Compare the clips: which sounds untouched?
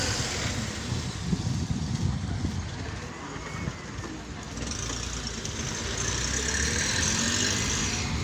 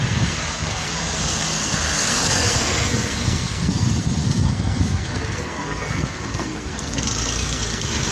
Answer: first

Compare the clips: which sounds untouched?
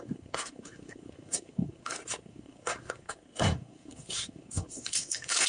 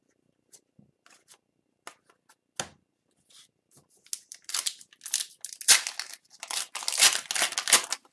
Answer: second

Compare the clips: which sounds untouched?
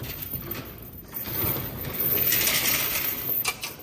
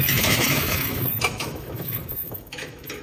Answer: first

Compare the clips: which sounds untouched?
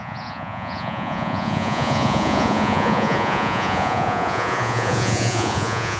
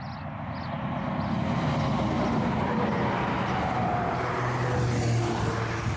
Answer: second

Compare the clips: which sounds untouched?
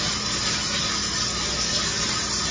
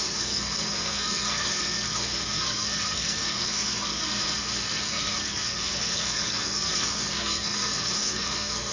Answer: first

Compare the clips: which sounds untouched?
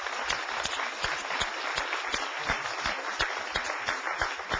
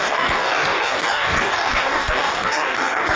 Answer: first